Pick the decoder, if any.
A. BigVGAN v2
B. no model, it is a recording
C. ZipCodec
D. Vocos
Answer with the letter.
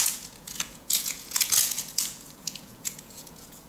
D